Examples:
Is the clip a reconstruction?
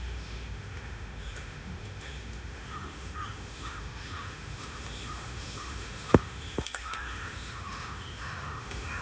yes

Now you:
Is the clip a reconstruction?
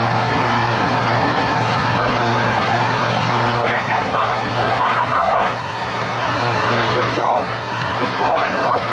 yes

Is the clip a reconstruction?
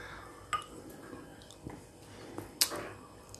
no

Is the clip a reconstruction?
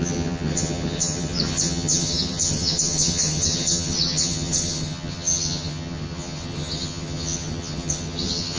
yes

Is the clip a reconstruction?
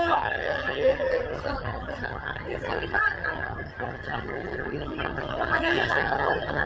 yes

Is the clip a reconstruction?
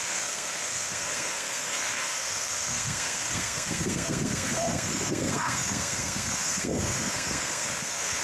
yes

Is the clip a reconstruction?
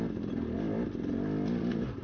no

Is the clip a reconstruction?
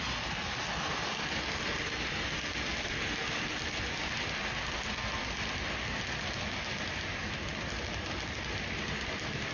no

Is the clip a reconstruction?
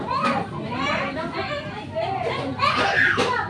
no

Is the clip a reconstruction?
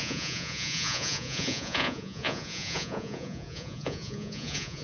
yes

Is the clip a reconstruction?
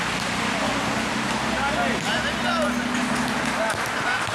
no